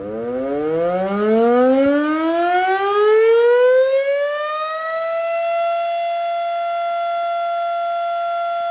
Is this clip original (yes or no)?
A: yes